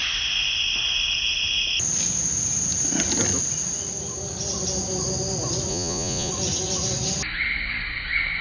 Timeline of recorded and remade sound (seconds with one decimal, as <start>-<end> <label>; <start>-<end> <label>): 0.0-5.7 recorded; 5.7-6.3 remade; 6.3-8.4 recorded